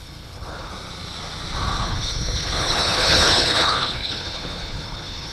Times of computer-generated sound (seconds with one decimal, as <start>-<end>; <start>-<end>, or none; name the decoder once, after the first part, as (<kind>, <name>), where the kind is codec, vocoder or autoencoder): 0.0-0.7 (codec, HILCodec); 1.8-5.3